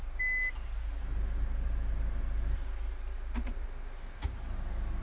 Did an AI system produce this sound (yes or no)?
no